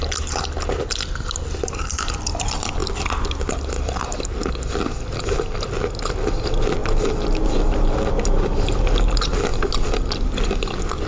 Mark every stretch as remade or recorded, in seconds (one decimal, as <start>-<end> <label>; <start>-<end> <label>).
0.0-11.1 recorded